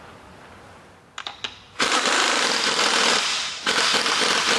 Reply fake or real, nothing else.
real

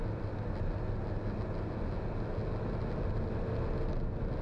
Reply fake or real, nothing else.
real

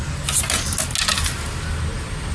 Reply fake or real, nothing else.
real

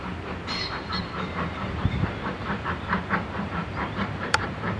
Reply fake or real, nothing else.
fake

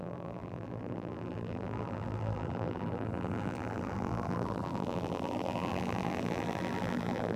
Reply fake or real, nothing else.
fake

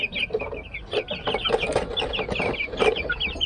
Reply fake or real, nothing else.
real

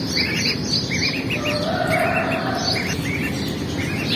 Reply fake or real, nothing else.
fake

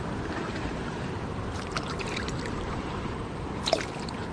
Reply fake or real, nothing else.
fake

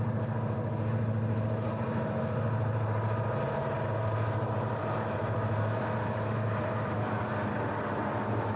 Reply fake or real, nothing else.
fake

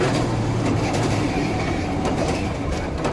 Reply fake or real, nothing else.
fake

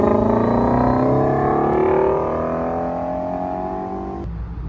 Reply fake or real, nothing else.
real